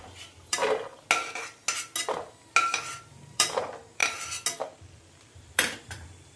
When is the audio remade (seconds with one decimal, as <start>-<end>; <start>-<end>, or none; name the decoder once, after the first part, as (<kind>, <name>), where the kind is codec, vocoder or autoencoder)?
0.0-0.6 (vocoder, BigVGAN v2); 2.8-4.0; 5.3-6.4